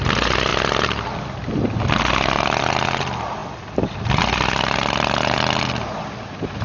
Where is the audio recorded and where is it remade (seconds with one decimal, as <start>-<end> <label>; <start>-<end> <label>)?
0.0-6.6 recorded